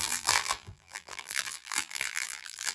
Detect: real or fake fake